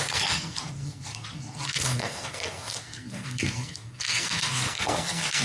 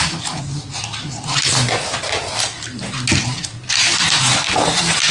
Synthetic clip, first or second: first